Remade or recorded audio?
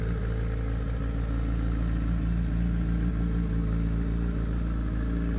recorded